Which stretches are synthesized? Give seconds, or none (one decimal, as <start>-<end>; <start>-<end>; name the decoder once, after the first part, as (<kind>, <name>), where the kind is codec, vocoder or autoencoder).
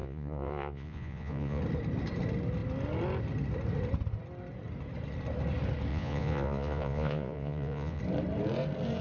0.0-1.6 (vocoder, Vocos); 5.9-8.0